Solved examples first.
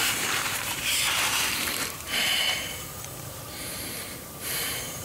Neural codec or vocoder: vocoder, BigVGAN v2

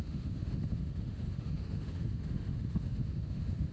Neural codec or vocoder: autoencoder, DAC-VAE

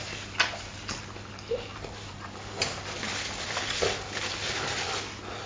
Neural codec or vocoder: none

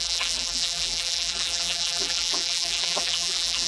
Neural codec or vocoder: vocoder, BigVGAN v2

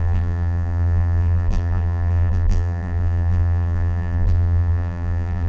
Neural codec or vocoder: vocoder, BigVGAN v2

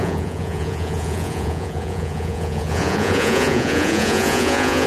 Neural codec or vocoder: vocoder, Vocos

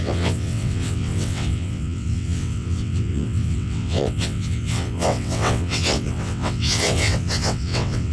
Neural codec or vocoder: vocoder, WaveNeXt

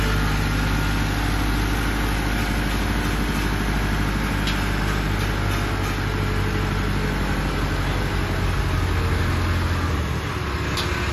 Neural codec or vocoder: none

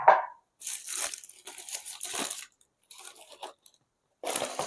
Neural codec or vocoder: none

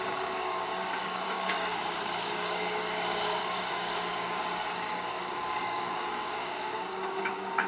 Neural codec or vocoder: codec, DAC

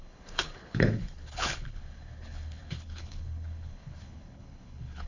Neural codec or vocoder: codec, HILCodec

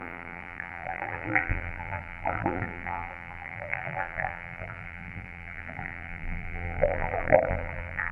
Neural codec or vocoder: vocoder, BigVGAN v2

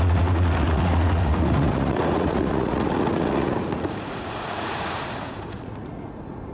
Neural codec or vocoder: vocoder, Vocos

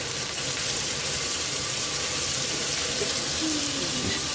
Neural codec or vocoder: none